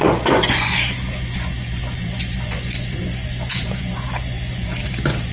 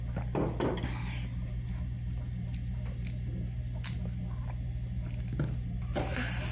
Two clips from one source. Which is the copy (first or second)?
first